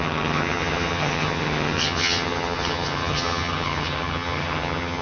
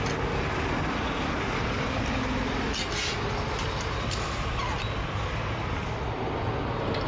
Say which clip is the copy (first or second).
first